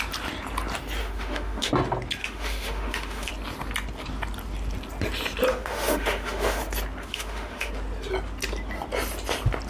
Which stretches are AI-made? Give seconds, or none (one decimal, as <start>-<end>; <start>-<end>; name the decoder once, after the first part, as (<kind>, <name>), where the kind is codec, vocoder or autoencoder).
1.0-1.7 (autoencoder, DAC-VAE); 2.2-3.3; 5.5-6.6; 7.0-7.7